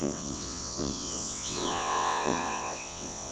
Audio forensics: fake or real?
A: fake